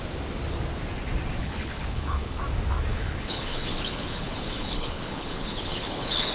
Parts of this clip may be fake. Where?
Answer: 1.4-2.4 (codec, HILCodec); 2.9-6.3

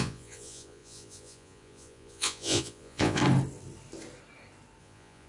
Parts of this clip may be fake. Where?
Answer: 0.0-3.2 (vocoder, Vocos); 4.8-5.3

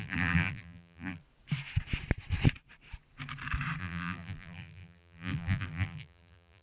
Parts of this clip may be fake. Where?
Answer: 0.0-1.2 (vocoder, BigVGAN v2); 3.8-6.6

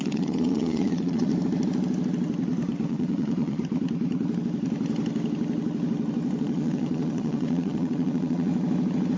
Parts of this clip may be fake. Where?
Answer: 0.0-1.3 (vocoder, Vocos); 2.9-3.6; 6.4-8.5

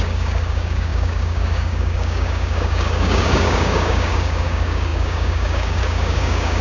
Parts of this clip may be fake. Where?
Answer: 0.0-6.6 (codec, DAC)

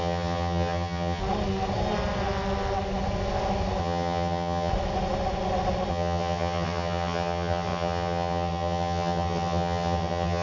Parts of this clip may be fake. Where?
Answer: 0.0-1.2 (vocoder, HiFi-GAN); 3.8-4.7; 5.9-10.4

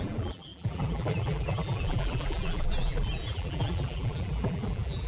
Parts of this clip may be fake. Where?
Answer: 0.0-5.1 (vocoder, BigVGAN v2)